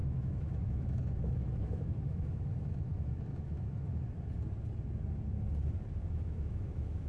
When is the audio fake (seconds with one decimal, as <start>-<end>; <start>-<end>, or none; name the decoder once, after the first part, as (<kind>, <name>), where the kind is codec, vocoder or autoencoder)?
0.0-4.1 (autoencoder, DAC-VAE); 6.0-7.1